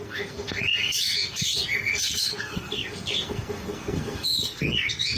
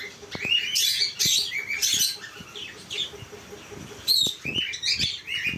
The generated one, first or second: first